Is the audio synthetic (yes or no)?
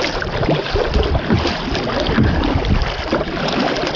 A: no